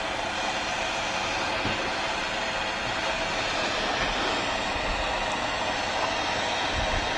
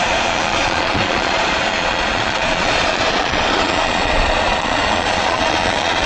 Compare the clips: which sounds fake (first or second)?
second